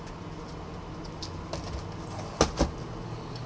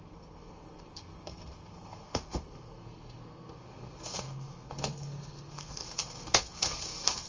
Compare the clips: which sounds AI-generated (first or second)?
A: second